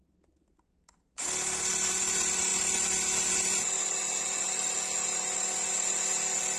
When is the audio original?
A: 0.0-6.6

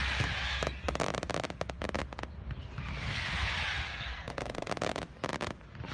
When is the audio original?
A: 0.0-3.9; 4.7-5.9

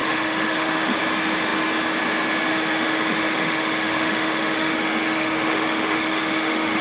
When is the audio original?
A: 1.0-2.5

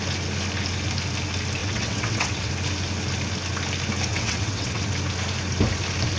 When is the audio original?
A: 0.0-1.6; 2.5-4.1; 4.9-6.2

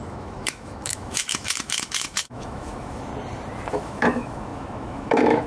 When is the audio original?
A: 3.1-3.7

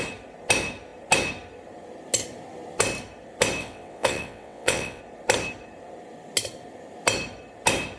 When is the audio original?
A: 0.0-3.6; 5.0-8.0

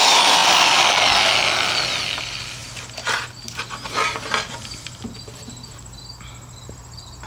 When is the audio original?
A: 0.0-7.3